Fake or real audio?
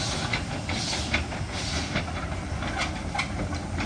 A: real